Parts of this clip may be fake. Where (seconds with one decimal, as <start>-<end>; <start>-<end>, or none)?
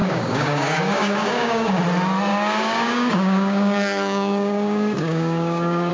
0.0-1.8; 2.3-5.9